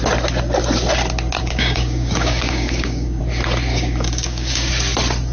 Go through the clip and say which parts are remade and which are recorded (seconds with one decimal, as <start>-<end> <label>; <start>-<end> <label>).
0.0-1.4 recorded; 1.4-3.2 remade; 3.2-3.7 recorded; 3.7-4.7 remade; 4.7-5.3 recorded